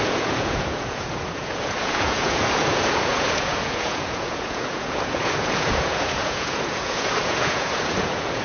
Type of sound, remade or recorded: remade